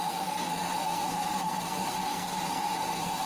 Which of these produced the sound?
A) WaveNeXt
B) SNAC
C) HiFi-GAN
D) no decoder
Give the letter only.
B